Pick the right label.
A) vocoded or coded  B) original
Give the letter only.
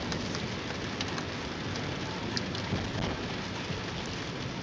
B